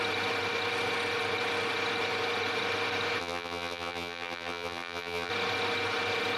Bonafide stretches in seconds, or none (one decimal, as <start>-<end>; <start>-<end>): 0.0-3.2; 5.3-6.4